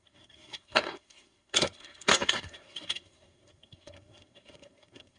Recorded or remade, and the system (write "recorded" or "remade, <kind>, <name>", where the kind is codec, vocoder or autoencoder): remade, codec, SNAC